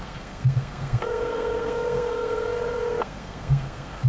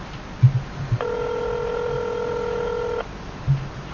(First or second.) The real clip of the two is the second